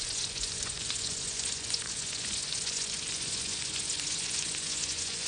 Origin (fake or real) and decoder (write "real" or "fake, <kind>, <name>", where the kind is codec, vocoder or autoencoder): fake, vocoder, Vocos